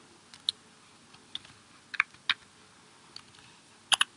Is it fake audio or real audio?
real